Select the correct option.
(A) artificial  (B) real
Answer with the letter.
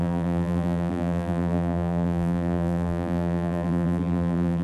A